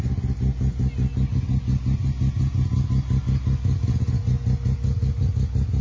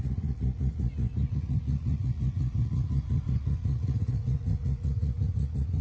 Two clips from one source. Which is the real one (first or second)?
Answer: first